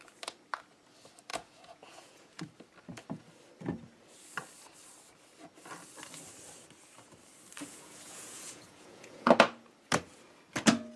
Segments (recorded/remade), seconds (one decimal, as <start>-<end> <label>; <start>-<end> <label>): 0.0-1.3 recorded; 1.3-2.4 remade; 2.4-7.6 recorded; 7.6-9.3 remade; 9.3-11.0 recorded